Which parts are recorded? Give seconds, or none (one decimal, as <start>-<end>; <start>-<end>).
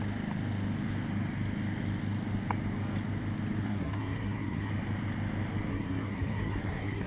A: 0.0-3.6; 4.7-5.7